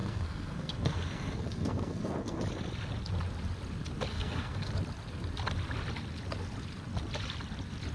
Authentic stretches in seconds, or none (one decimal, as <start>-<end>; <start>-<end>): 2.4-4.1; 4.7-7.9